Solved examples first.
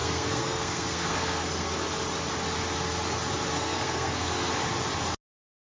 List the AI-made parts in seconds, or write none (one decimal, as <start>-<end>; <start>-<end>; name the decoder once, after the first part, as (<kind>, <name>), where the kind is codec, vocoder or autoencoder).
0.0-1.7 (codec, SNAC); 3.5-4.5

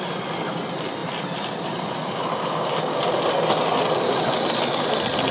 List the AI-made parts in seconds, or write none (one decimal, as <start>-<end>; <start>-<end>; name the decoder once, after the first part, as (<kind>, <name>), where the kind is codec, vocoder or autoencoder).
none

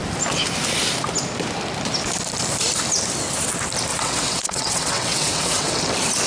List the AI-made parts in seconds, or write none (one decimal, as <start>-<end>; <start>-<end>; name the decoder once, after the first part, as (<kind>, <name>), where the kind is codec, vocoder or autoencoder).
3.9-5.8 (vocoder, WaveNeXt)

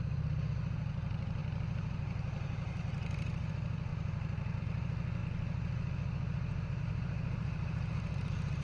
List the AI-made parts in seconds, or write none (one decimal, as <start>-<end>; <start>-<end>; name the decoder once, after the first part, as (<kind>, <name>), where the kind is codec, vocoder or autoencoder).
0.0-5.2 (vocoder, BigVGAN v2); 6.8-8.6

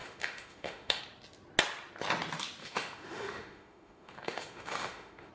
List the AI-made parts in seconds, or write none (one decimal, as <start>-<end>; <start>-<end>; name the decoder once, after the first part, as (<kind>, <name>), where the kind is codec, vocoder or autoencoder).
0.0-1.0 (autoencoder, DAC-VAE); 2.6-5.3

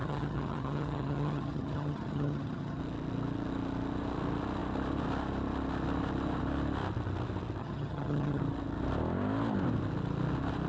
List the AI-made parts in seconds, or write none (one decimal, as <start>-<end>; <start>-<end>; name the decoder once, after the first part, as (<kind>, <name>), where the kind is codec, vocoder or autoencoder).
0.0-2.8 (vocoder, HiFi-GAN); 7.6-8.4

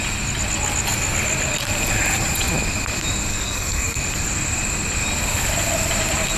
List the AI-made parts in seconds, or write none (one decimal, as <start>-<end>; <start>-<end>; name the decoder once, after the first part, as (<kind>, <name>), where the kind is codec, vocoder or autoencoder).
3.3-4.0 (codec, SNAC)

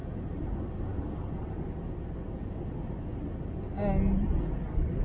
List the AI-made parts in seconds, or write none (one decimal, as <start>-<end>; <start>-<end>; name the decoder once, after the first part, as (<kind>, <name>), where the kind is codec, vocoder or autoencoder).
none